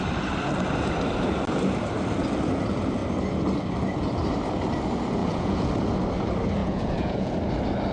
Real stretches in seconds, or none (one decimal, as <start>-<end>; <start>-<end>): 0.0-5.2; 5.7-6.6; 7.3-7.9